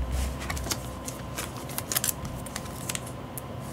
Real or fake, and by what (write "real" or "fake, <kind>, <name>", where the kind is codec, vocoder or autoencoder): real